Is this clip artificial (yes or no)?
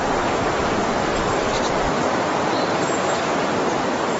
no